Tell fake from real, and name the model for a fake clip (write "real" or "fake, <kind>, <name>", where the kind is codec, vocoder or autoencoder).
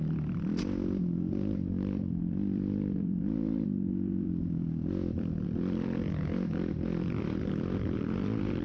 fake, vocoder, BigVGAN v2